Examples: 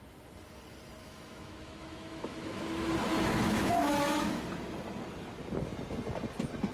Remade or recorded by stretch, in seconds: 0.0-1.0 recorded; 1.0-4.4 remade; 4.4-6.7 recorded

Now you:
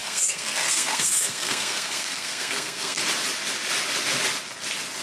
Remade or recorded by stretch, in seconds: 0.0-3.0 remade; 3.0-5.0 recorded

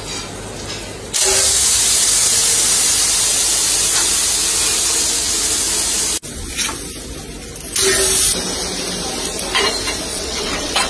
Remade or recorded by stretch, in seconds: 0.0-10.1 recorded; 10.1-10.9 remade

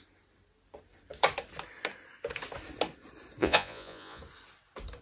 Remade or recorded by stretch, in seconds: 0.0-3.4 recorded; 3.4-4.2 remade; 4.2-5.0 recorded

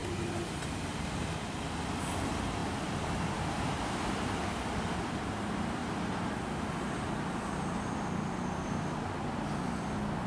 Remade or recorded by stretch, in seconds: 0.0-0.7 recorded; 0.7-5.8 remade; 5.8-10.3 recorded

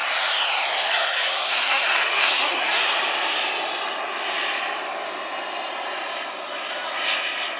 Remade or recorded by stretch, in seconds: 0.0-0.9 recorded; 0.9-2.8 remade; 2.8-7.6 recorded

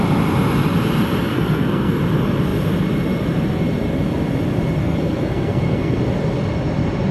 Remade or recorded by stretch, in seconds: 0.0-1.3 recorded; 1.3-2.0 remade; 2.0-4.8 recorded; 4.8-6.0 remade; 6.0-7.1 recorded